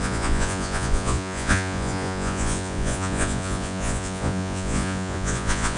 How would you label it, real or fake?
fake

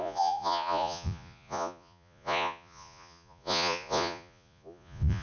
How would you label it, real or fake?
fake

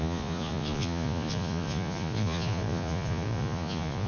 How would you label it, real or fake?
fake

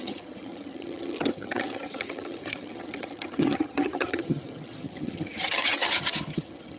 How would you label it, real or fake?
fake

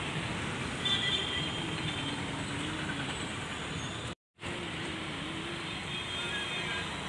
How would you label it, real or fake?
fake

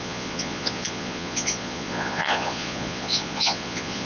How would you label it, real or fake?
fake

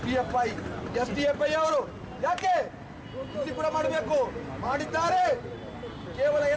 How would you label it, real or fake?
real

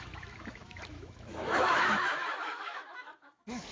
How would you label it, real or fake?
fake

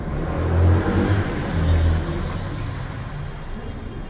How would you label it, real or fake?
real